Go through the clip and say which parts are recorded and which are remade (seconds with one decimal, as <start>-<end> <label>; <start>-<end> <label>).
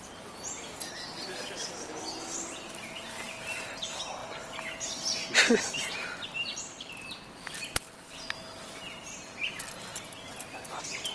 0.0-11.1 recorded